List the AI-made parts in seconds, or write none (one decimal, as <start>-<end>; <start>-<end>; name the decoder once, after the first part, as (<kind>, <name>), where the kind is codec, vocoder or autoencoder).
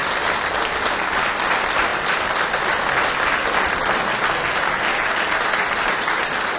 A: 0.0-0.5 (vocoder, BigVGAN v2)